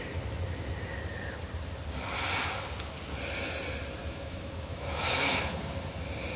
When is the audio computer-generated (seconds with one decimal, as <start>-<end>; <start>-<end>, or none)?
4.0-5.6